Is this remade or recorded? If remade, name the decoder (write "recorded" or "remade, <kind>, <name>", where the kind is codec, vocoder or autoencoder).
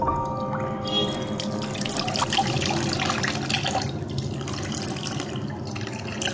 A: recorded